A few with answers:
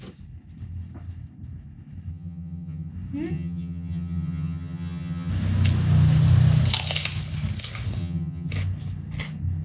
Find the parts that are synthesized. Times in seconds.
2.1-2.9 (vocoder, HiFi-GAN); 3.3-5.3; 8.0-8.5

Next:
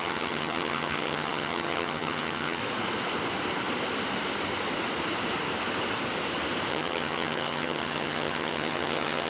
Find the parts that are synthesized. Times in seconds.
0.0-2.6 (vocoder, HiFi-GAN); 6.7-9.3

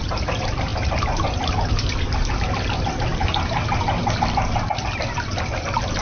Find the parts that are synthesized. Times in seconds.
none

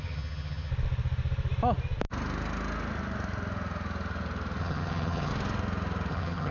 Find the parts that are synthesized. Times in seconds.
0.0-0.7 (vocoder, HiFi-GAN); 4.6-5.3; 6.1-6.5

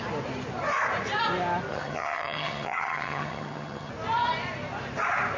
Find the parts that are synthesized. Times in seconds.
1.7-3.9 (vocoder, HiFi-GAN)

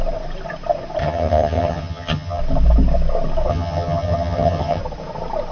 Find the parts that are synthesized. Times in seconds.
1.0-2.4 (vocoder, HiFi-GAN); 3.5-4.8

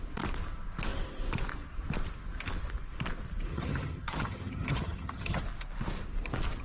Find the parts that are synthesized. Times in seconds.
3.5-5.4 (vocoder, HiFi-GAN)